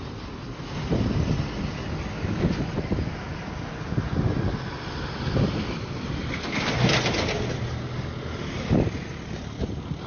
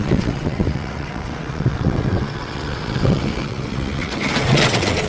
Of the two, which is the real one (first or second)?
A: first